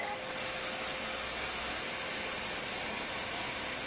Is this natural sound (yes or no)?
yes